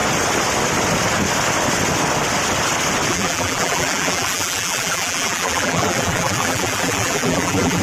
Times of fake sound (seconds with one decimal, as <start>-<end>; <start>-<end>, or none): 3.1-7.8